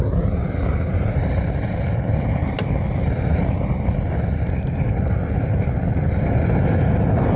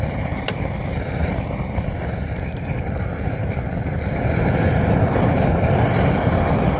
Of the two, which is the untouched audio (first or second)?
first